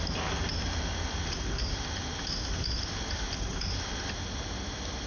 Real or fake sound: real